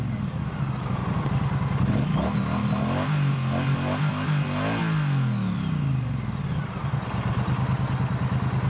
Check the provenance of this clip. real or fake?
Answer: real